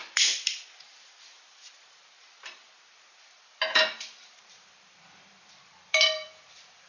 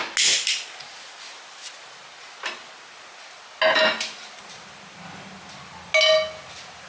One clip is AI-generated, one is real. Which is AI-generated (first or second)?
first